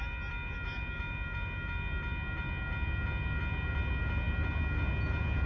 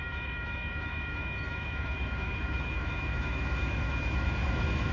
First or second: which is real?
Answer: first